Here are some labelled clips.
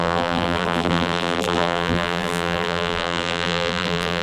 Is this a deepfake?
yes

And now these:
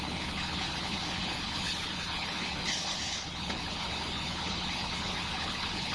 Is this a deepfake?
yes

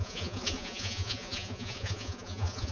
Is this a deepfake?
yes